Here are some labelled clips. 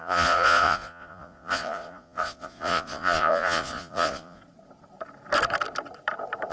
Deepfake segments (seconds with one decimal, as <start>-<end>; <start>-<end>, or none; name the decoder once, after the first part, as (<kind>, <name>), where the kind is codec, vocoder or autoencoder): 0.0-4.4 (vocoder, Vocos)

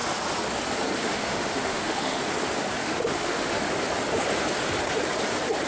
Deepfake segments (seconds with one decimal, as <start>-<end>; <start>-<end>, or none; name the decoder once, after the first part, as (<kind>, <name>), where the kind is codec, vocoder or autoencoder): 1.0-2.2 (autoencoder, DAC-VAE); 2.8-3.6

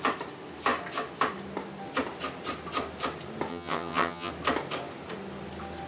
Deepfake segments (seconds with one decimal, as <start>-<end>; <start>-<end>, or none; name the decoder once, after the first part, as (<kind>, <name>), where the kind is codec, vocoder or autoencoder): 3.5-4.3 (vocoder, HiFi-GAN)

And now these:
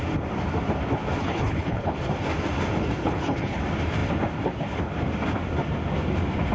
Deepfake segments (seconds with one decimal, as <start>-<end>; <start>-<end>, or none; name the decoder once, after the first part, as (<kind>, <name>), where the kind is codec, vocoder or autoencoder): 1.2-1.9 (codec, HILCodec); 3.0-3.6

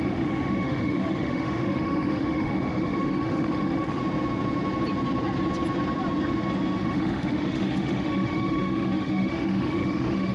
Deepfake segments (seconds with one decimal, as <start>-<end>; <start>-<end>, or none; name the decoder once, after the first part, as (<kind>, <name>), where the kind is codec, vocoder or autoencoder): 0.0-4.0 (autoencoder, DAC-VAE); 6.8-10.3

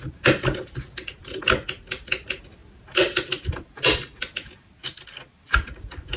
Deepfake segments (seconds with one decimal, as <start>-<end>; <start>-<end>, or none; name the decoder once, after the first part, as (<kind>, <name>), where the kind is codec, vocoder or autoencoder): none

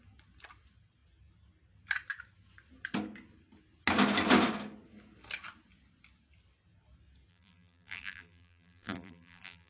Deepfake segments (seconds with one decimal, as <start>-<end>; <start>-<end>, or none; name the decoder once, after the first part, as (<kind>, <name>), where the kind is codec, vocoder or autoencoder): 7.3-9.7 (vocoder, BigVGAN v2)